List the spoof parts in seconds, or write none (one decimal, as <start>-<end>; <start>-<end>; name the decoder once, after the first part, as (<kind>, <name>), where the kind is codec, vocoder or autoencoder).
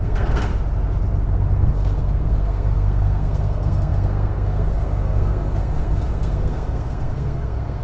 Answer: 0.0-0.5 (codec, SNAC); 1.2-7.8